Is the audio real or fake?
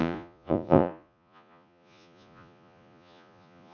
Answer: fake